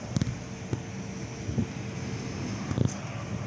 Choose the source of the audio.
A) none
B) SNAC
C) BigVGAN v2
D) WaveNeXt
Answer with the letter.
A